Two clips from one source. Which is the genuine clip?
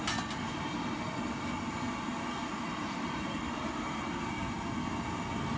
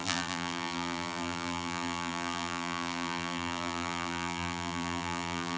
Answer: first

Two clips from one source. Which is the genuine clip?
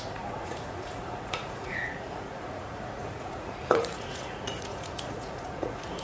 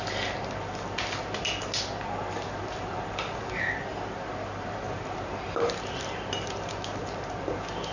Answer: second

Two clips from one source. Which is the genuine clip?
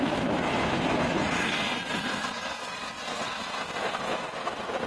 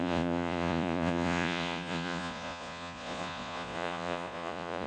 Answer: first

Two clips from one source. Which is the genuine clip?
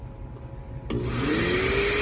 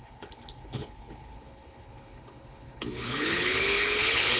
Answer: first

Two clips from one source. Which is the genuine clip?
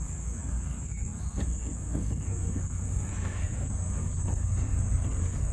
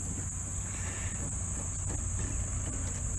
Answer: second